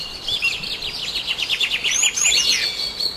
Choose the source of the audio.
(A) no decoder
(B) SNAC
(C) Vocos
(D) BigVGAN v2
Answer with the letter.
A